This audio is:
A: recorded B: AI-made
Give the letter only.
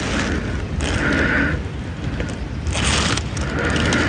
A